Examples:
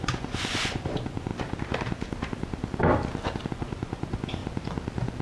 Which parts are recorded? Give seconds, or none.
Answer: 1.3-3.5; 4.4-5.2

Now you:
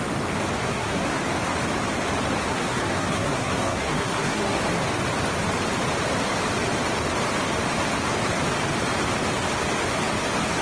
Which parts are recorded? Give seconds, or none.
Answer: 0.0-0.6; 1.2-2.5; 4.6-10.6

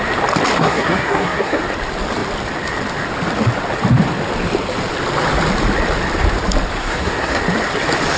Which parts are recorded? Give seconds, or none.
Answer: 0.0-0.6; 1.6-6.8; 7.4-8.2